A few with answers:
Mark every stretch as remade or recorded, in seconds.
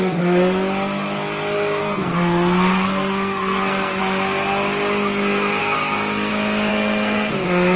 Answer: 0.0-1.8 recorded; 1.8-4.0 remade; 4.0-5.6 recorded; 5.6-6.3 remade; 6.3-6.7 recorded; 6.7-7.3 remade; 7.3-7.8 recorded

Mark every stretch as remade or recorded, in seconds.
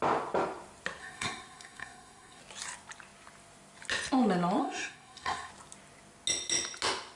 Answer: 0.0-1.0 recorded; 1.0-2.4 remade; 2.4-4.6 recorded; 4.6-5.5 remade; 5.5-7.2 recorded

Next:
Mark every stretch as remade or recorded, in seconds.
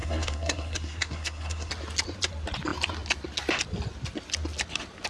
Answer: 0.0-1.7 remade; 1.7-5.1 recorded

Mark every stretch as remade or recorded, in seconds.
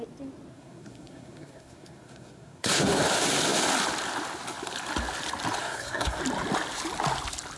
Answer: 0.0-0.5 recorded; 0.5-3.0 remade; 3.0-5.6 recorded; 5.6-6.2 remade; 6.2-7.6 recorded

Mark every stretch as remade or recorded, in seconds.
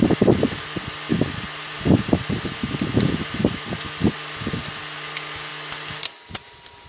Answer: 0.0-6.9 recorded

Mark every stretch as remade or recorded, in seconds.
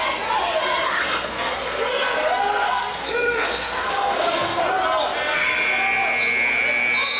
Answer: 0.0-1.0 recorded; 1.0-4.6 remade; 4.6-7.2 recorded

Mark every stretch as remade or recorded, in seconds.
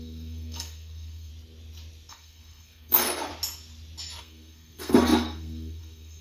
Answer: 0.0-1.3 remade; 1.3-2.1 recorded; 2.1-3.3 remade; 3.3-4.2 recorded; 4.2-6.2 remade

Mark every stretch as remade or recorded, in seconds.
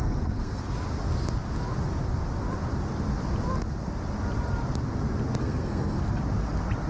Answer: 0.0-0.6 remade; 0.6-5.4 recorded; 5.4-6.0 remade; 6.0-6.9 recorded